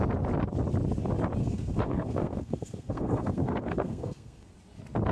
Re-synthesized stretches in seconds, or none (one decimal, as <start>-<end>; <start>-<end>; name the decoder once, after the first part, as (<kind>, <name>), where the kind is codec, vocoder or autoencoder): 1.4-4.5 (codec, SNAC)